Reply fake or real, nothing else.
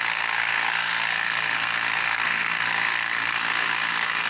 fake